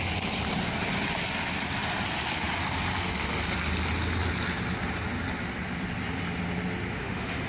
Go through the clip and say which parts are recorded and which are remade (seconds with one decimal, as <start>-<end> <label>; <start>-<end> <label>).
0.0-7.0 recorded; 7.0-7.5 remade